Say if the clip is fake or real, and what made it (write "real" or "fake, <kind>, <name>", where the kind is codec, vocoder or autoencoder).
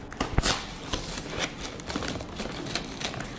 real